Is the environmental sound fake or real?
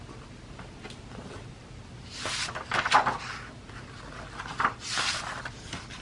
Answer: fake